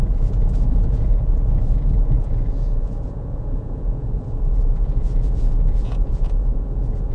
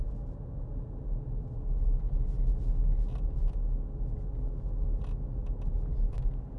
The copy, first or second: first